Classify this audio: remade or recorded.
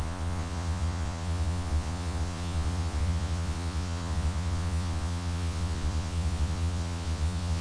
remade